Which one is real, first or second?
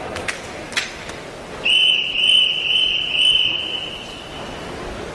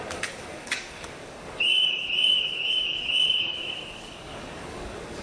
first